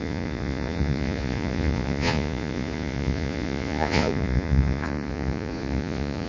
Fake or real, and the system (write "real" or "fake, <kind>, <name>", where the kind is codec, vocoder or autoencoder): fake, vocoder, Vocos